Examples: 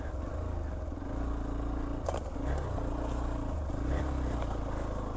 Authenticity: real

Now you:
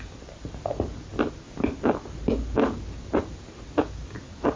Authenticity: real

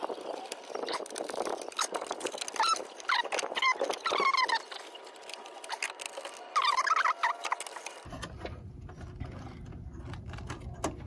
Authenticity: real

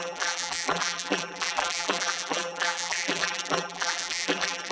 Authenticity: fake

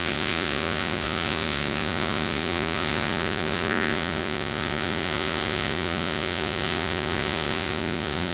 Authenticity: fake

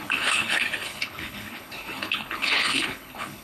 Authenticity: fake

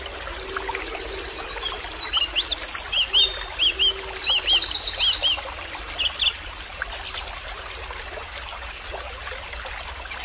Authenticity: real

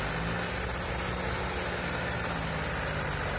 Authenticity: real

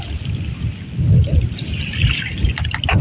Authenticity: real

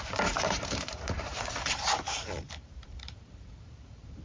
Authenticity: fake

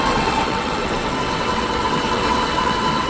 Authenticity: fake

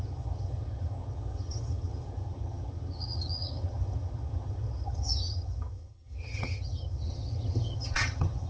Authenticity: fake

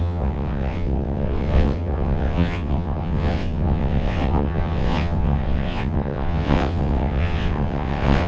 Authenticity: fake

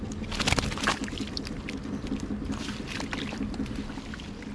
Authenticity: real